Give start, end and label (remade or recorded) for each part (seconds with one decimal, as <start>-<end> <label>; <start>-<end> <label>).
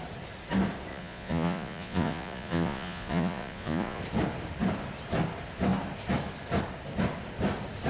0.0-0.9 recorded; 0.9-4.0 remade; 4.0-7.9 recorded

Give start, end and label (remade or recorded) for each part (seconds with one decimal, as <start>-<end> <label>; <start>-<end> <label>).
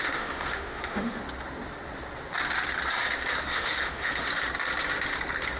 0.0-1.2 remade; 1.2-3.4 recorded; 3.4-4.3 remade; 4.3-5.6 recorded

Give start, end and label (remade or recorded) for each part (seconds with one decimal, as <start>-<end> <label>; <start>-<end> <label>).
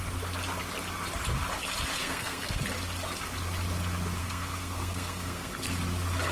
0.0-2.0 recorded; 2.0-2.6 remade; 2.6-4.2 recorded; 4.2-5.6 remade; 5.6-6.3 recorded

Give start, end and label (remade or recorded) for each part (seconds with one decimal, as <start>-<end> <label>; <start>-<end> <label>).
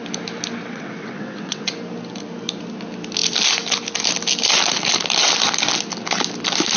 0.0-0.7 recorded; 0.7-1.7 remade; 1.7-6.8 recorded